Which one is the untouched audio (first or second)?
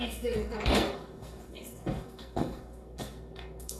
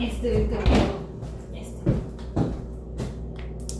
second